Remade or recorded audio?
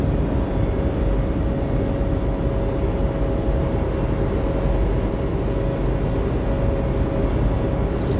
recorded